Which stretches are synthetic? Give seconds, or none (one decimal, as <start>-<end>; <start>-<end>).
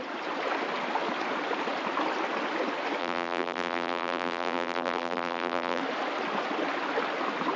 3.0-5.8